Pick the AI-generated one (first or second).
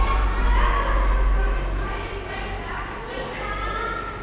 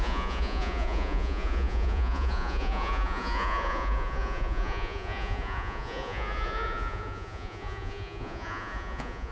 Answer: second